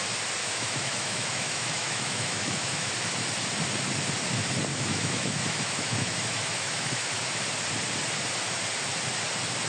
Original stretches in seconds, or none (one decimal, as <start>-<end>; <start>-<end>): 0.0-0.4; 2.9-4.7; 7.4-9.7

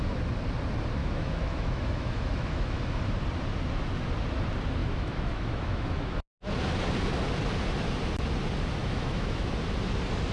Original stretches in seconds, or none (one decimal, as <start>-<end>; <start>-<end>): 0.0-1.0; 2.8-4.8; 6.1-8.8; 9.5-10.3